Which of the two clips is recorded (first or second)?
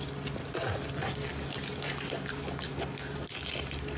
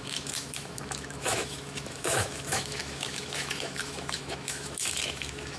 first